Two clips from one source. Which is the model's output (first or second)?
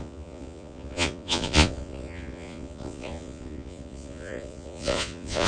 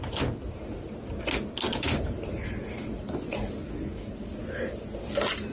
first